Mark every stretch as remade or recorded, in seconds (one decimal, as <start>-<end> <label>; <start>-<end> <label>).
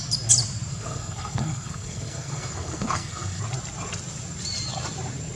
0.0-0.7 recorded; 0.7-3.4 remade; 3.4-5.4 recorded